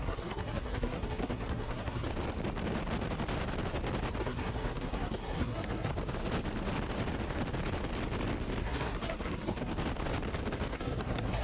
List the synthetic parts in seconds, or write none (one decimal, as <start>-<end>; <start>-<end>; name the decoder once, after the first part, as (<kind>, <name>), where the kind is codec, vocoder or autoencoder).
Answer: 0.0-2.1 (codec, SNAC); 4.2-5.9; 8.6-9.7; 10.7-11.4